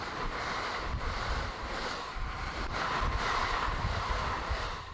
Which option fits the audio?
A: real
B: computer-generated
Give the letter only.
B